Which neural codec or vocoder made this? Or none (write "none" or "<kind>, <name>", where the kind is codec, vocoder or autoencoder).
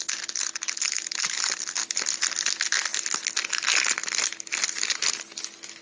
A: none